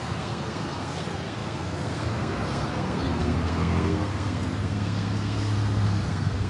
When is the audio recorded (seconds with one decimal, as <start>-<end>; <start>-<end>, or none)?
none